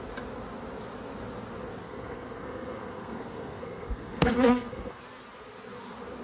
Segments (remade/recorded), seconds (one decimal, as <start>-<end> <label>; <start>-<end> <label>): 0.0-1.8 recorded; 1.8-5.0 remade; 5.0-6.2 recorded